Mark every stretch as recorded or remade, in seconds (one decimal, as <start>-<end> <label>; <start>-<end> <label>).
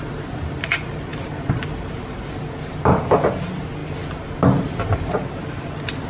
0.0-6.1 recorded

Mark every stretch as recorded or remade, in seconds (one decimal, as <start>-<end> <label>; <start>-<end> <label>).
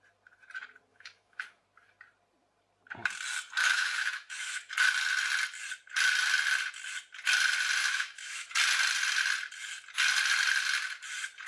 0.0-0.9 recorded; 0.9-1.6 remade; 1.6-3.6 recorded; 3.6-4.7 remade; 4.7-7.8 recorded; 7.8-8.5 remade; 8.5-11.5 recorded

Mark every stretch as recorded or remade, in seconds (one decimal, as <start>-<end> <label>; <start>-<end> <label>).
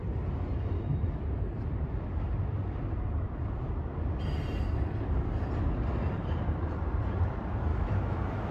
0.0-7.7 recorded; 7.7-8.5 remade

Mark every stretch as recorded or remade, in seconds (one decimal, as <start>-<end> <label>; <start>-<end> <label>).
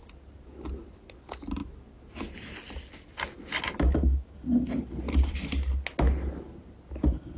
0.0-7.4 recorded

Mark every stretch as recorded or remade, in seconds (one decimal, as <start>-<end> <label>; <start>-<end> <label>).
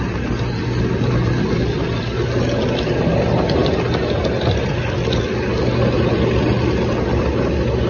0.0-7.9 recorded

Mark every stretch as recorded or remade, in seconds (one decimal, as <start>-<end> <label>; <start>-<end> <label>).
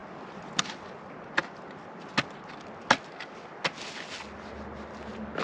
0.0-5.4 recorded